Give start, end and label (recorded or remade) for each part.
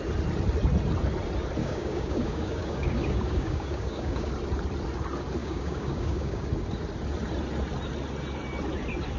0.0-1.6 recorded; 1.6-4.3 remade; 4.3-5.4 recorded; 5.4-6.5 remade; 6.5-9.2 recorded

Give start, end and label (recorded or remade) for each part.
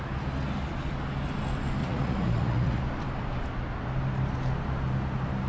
0.0-1.8 recorded; 1.8-2.8 remade; 2.8-5.5 recorded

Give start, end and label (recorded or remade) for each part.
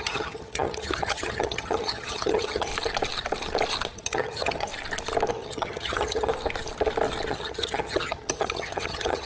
0.0-2.7 remade; 2.7-3.9 recorded; 3.9-4.7 remade; 4.7-5.3 recorded; 5.3-6.3 remade; 6.3-7.3 recorded; 7.3-9.3 remade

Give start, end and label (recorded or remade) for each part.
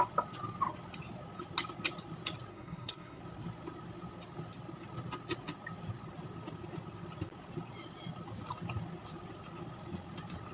0.0-2.5 recorded; 2.5-3.2 remade; 3.2-10.5 recorded